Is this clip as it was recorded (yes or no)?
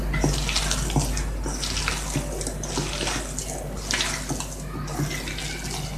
yes